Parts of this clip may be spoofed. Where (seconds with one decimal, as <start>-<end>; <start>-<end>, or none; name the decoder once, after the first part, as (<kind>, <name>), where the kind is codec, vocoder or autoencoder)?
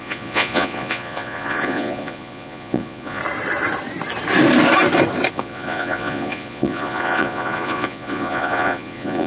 0.0-3.2 (vocoder, Vocos); 5.3-9.3